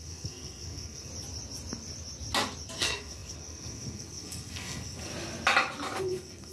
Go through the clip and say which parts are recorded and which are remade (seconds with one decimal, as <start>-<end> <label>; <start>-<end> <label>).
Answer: 0.0-1.1 remade; 1.1-2.8 recorded; 2.8-5.1 remade; 5.1-6.0 recorded; 6.0-6.5 remade

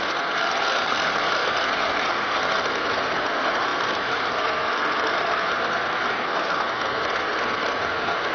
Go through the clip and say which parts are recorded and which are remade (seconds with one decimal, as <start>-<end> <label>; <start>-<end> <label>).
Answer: 0.0-8.3 remade